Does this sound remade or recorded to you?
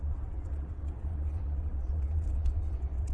remade